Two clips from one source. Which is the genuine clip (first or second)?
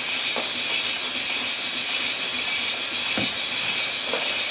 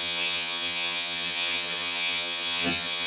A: first